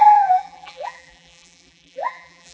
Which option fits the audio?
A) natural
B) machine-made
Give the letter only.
B